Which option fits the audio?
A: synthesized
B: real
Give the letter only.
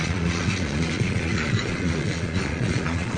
A